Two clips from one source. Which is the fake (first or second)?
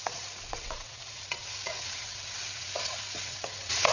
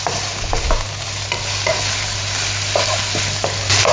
first